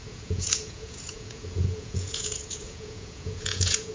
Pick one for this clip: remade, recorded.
remade